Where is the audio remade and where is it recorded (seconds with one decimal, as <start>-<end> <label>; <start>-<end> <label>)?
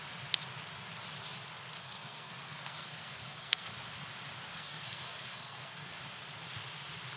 0.0-1.8 recorded; 1.8-3.8 remade; 3.8-4.5 recorded; 4.5-6.0 remade; 6.0-7.2 recorded